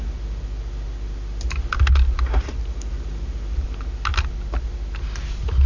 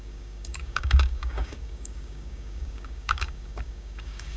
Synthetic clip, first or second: second